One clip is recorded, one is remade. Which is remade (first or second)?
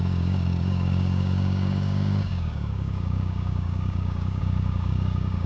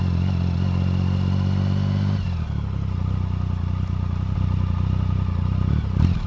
first